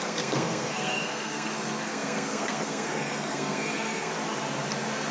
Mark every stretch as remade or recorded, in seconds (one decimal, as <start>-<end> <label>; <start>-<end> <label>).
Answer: 0.0-4.1 remade; 4.1-5.1 recorded